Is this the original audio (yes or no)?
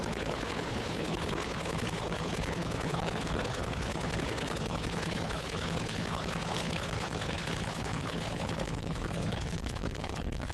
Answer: no